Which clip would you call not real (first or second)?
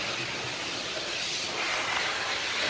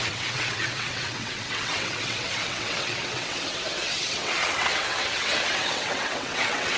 second